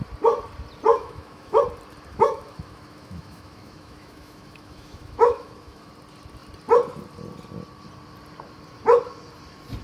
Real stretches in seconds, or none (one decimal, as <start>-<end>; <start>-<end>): 0.0-0.9; 1.6-2.1; 5.9-9.8